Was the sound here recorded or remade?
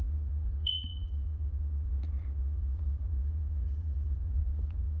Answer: remade